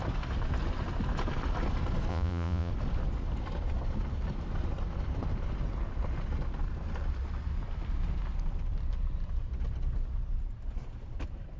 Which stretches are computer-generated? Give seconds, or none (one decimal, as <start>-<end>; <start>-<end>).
2.1-2.7